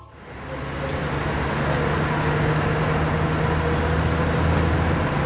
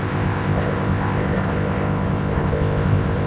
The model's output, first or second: second